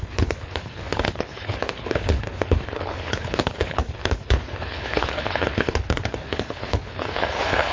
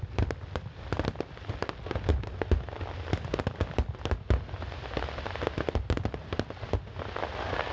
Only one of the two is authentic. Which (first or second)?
second